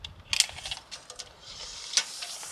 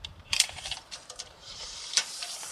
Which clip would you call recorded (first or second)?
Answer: first